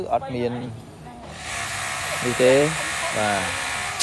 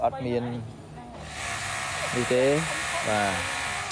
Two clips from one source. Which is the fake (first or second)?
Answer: first